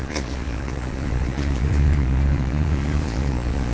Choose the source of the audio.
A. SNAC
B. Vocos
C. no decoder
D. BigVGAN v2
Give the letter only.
B